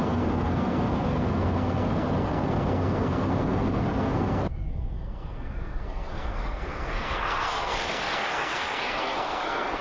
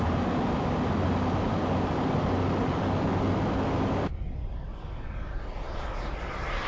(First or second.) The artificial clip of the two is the first